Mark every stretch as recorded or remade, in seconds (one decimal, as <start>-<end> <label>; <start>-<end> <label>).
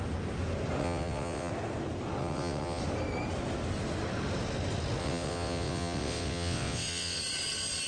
0.0-0.8 recorded; 0.8-1.5 remade; 1.5-2.2 recorded; 2.2-2.8 remade; 2.8-5.0 recorded; 5.0-7.2 remade; 7.2-7.9 recorded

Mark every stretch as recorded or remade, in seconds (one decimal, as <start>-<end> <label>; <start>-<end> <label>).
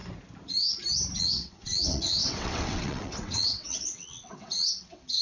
0.0-1.2 recorded; 1.2-5.2 remade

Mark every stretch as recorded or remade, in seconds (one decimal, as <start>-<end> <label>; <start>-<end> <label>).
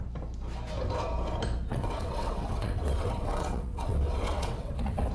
0.0-1.7 recorded; 1.7-5.1 remade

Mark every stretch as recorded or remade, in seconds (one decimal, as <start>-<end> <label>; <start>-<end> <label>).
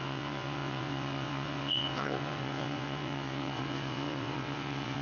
0.0-5.0 remade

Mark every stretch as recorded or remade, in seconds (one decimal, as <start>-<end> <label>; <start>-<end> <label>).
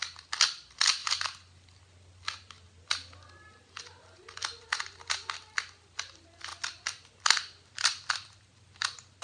0.0-9.2 recorded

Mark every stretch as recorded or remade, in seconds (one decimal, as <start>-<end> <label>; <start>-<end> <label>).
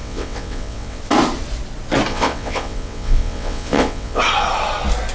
0.0-1.0 remade; 1.0-2.1 recorded; 2.1-4.2 remade; 4.2-5.1 recorded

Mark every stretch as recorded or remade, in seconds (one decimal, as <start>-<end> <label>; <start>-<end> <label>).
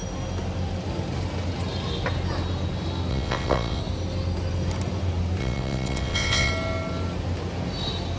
0.0-3.1 recorded; 3.1-3.8 remade; 3.8-5.4 recorded; 5.4-6.5 remade; 6.5-8.2 recorded